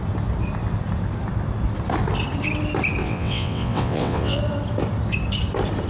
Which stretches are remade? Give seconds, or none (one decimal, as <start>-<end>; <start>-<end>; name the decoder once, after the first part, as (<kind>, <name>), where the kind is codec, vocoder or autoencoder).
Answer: 3.0-4.4 (vocoder, WaveNeXt)